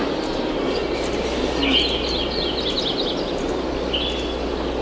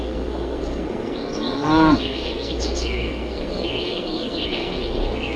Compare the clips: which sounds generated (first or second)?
second